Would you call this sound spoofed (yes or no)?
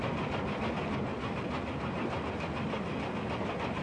no